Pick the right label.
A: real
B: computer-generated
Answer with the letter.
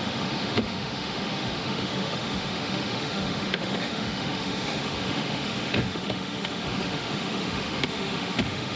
B